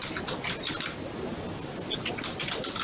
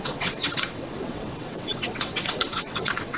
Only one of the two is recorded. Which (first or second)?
first